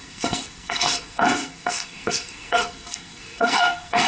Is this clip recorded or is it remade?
remade